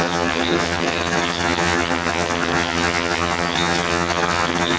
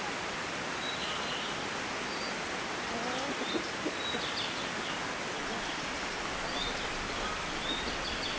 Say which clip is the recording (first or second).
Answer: second